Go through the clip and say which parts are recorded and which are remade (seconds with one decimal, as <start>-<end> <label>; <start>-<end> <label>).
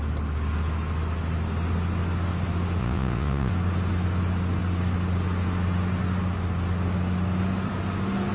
0.0-2.8 recorded; 2.8-3.5 remade; 3.5-8.3 recorded